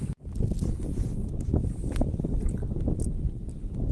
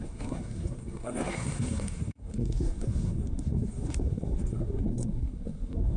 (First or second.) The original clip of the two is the first